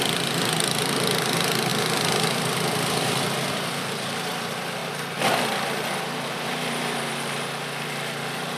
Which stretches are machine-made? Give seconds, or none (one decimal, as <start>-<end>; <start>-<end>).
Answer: 0.0-1.7; 3.5-4.8; 6.0-8.6